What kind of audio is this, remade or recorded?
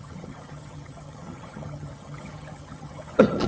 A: remade